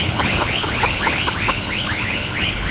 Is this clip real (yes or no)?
no